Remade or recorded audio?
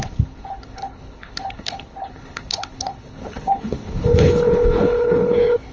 remade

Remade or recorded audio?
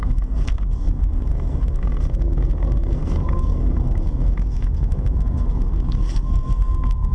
remade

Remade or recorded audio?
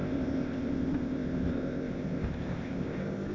remade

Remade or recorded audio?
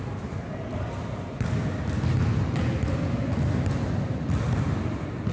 recorded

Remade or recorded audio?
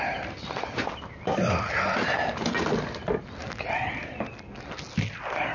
recorded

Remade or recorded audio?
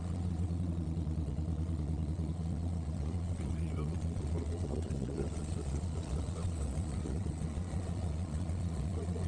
remade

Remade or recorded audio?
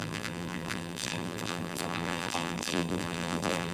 remade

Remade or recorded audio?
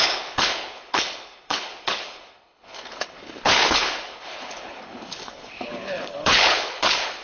remade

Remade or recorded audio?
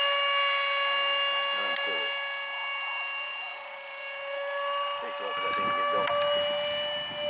recorded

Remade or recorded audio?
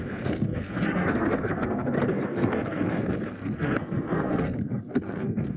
remade